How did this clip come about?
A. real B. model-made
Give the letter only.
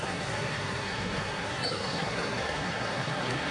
B